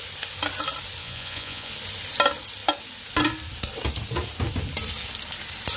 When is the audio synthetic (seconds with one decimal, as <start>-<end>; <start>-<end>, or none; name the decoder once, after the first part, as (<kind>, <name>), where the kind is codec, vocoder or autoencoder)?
1.0-1.7 (vocoder, Vocos)